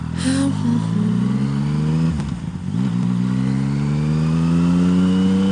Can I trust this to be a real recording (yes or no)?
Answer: yes